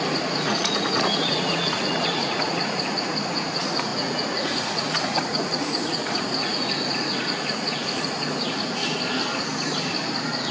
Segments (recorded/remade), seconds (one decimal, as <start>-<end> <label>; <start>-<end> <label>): 0.0-8.8 remade; 8.8-10.5 recorded